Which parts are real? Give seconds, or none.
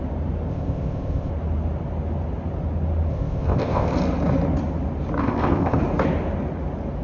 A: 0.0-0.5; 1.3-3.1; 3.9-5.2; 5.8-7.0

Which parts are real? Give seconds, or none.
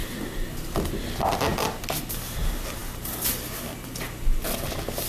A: 0.0-2.8; 4.0-5.1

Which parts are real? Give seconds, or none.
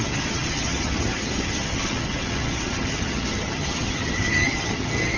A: none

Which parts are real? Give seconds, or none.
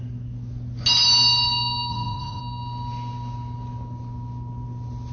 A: 0.0-1.9; 2.4-5.1